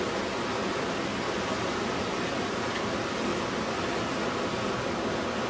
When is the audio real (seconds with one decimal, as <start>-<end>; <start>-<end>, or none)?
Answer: 0.0-5.5